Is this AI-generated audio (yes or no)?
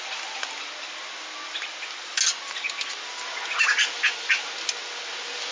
no